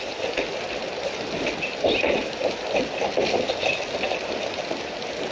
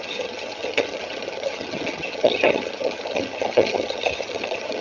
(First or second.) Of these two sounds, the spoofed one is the second